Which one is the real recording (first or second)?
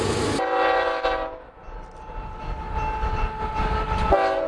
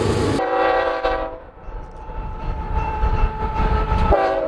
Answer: first